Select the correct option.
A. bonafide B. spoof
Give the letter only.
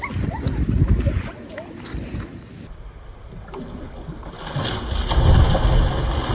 A